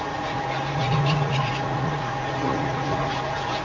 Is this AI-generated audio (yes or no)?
yes